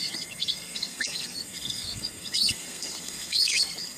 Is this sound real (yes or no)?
no